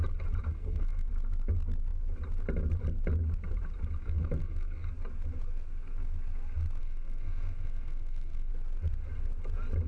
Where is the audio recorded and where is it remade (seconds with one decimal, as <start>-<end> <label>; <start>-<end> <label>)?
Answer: 0.0-0.5 recorded; 0.5-1.1 remade; 1.1-4.0 recorded; 4.0-4.9 remade; 4.9-6.8 recorded; 6.8-8.5 remade; 8.5-9.9 recorded